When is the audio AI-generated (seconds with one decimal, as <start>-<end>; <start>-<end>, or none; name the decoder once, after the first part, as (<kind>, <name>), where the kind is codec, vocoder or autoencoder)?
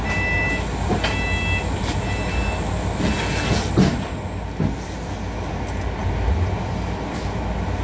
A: none